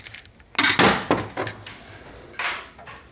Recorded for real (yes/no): yes